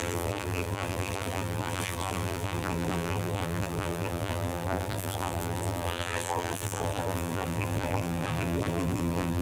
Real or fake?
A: fake